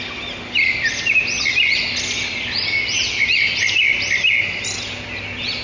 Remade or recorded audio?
recorded